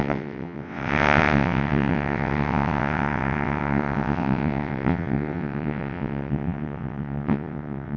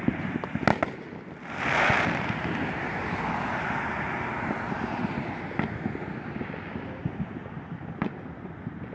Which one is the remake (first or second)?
first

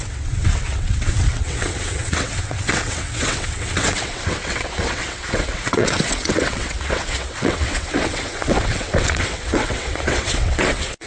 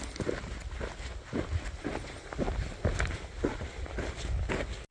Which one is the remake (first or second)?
first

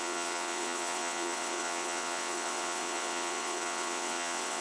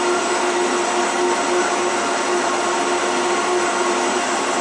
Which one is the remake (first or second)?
first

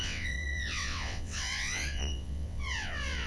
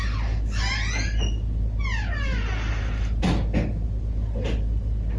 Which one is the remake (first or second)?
first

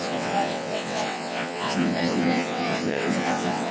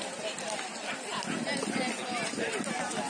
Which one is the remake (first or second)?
first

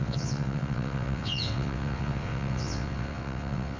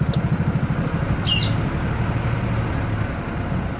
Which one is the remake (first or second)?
first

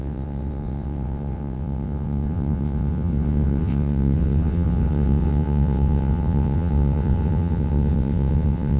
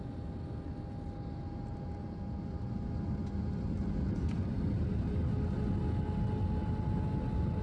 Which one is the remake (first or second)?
first